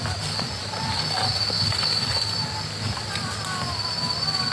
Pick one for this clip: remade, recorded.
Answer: recorded